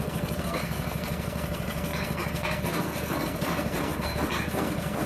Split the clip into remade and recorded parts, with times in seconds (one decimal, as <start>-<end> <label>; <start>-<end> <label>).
0.0-5.1 remade